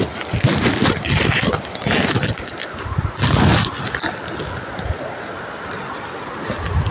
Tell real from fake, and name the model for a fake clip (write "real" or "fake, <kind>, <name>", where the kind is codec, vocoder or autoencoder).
real